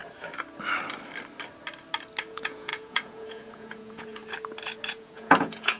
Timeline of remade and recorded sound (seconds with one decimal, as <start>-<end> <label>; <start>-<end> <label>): 0.0-2.3 recorded; 2.3-4.2 remade; 4.2-4.9 recorded; 4.9-5.8 remade